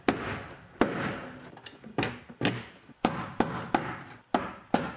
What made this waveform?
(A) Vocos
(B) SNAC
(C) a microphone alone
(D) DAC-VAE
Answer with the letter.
C